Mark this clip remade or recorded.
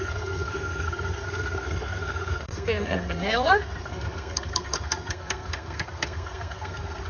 remade